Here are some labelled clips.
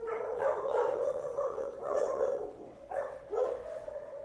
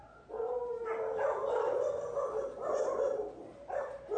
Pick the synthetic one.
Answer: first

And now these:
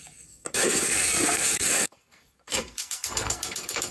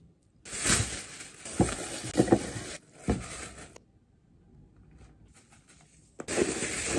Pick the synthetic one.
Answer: first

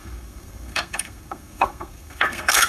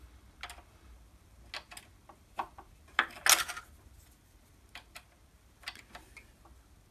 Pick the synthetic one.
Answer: first